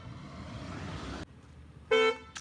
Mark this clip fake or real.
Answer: real